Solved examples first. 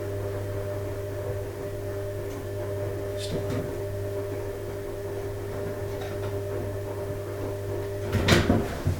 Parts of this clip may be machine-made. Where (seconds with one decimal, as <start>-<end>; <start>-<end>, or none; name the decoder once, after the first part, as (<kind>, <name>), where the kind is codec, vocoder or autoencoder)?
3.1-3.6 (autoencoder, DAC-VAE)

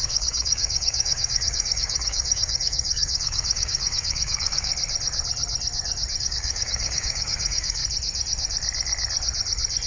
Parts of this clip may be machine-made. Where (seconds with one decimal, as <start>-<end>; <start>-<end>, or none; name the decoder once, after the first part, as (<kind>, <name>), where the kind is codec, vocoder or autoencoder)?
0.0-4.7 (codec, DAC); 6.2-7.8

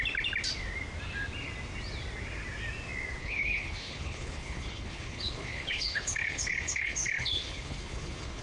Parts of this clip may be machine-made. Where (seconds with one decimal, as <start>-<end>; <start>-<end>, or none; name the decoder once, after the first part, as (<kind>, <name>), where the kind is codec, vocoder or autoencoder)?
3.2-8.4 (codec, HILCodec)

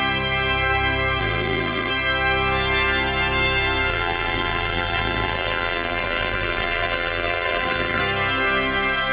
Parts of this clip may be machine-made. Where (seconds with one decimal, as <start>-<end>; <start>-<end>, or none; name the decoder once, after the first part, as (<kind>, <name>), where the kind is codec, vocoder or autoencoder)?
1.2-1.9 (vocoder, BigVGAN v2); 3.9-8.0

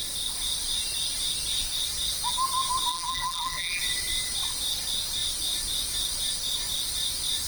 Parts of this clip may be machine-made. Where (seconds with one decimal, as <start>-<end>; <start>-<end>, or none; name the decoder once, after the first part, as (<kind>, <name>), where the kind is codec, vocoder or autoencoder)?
2.9-3.8 (vocoder, BigVGAN v2)